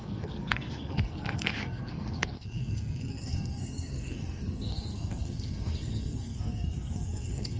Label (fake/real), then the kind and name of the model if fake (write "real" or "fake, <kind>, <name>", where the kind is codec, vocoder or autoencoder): fake, codec, SNAC